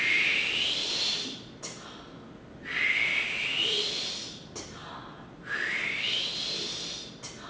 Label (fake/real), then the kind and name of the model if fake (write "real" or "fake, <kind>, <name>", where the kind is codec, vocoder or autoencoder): real